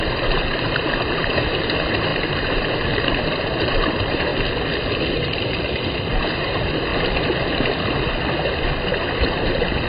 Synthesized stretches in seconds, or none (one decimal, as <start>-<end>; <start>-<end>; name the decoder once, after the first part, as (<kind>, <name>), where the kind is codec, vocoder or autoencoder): 0.0-4.3 (vocoder, BigVGAN v2); 5.6-6.9; 9.0-9.9